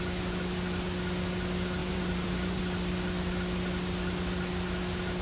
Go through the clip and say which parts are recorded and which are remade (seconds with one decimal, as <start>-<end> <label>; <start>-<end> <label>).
0.0-1.8 recorded; 1.8-2.6 remade; 2.6-5.2 recorded